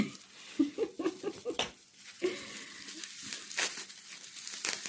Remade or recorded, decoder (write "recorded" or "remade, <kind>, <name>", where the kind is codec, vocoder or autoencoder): recorded